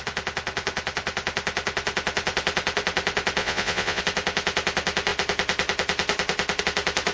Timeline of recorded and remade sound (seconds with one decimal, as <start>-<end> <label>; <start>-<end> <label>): 0.0-3.4 recorded; 3.4-4.0 remade; 4.0-7.1 recorded